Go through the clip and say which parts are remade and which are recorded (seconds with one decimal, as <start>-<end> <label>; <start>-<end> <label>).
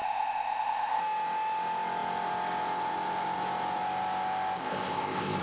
0.0-1.0 remade; 1.0-4.6 recorded; 4.6-5.4 remade